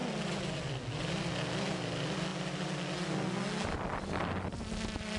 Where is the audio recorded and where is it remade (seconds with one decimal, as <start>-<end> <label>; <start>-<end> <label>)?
0.0-5.2 recorded